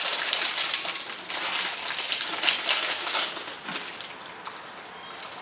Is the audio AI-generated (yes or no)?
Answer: no